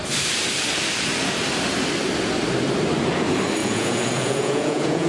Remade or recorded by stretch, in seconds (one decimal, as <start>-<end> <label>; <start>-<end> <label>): 0.0-3.6 recorded; 3.6-5.1 remade